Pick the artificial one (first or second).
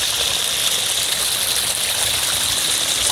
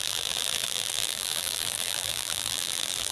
second